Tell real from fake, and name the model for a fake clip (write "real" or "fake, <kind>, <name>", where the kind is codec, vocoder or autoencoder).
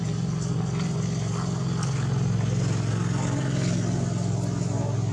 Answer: real